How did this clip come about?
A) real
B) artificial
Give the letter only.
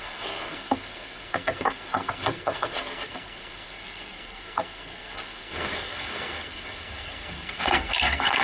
B